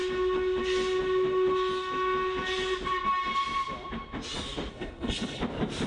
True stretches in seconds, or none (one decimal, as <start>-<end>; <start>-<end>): 0.0-4.7; 5.4-5.9